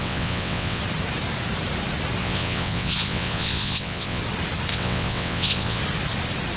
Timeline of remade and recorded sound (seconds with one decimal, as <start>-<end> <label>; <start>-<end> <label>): 0.0-0.8 remade; 0.8-2.2 recorded; 2.2-4.2 remade; 4.2-4.7 recorded; 4.7-5.8 remade; 5.8-6.6 recorded